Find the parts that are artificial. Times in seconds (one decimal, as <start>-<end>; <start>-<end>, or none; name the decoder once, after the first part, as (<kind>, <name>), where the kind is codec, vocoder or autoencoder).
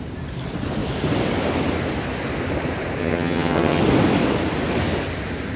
3.0-3.8 (vocoder, HiFi-GAN)